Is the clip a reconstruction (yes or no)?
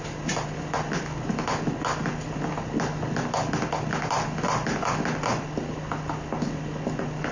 no